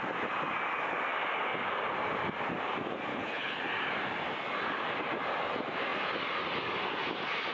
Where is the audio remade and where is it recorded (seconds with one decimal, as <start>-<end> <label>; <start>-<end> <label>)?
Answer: 0.0-3.1 recorded; 3.1-3.6 remade; 3.6-7.5 recorded